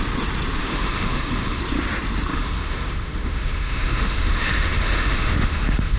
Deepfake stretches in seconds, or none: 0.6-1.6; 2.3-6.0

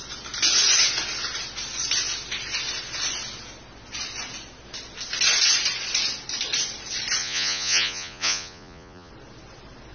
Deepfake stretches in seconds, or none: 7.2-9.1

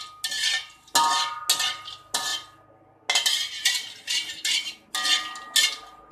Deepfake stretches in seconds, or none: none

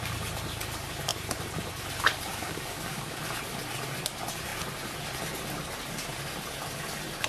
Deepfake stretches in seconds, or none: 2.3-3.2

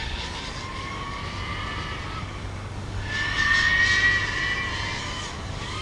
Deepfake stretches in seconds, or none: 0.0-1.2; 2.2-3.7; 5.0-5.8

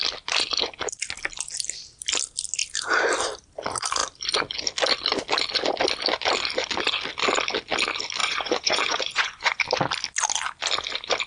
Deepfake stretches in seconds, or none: 8.2-9.6

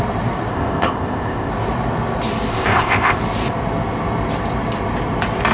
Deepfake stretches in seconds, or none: 0.5-1.5; 2.5-3.2

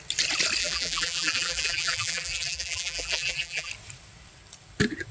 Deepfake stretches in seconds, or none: 0.6-3.7